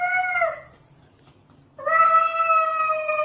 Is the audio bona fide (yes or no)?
yes